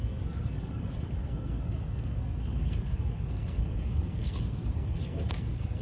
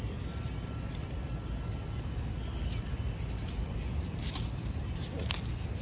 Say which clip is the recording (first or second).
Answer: second